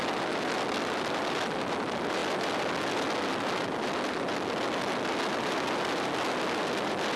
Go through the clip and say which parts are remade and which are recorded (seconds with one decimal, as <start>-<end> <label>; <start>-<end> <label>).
0.0-7.2 recorded